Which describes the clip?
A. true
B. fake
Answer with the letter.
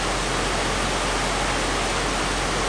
A